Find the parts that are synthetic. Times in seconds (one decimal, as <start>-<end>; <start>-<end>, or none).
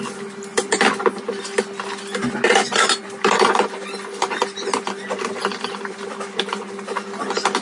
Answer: 5.5-6.6